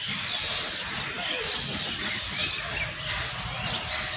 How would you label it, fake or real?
real